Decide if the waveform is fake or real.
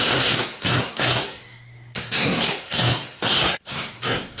fake